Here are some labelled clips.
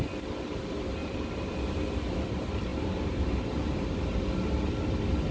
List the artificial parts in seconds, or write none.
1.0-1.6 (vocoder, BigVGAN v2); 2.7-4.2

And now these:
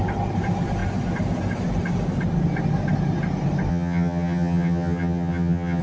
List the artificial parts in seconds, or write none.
3.7-5.8 (vocoder, HiFi-GAN)

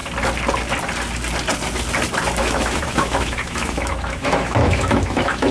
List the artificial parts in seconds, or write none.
2.4-5.5 (autoencoder, DAC-VAE)

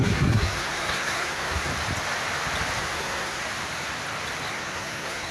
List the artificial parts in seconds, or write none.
0.0-1.7 (codec, SNAC); 2.8-3.4; 4.5-5.3

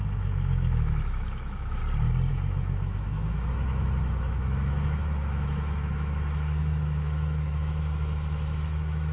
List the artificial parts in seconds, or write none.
0.0-1.8 (autoencoder, DAC-VAE); 2.3-9.1

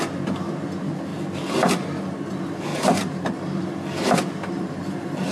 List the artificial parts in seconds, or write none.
1.1-2.3 (vocoder, BigVGAN v2); 2.7-5.3

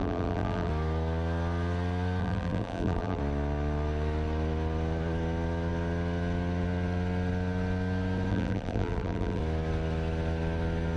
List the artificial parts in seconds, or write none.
0.0-0.7 (vocoder, BigVGAN v2); 2.2-3.2; 8.3-9.4